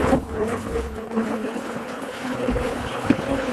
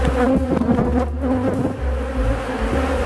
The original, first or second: second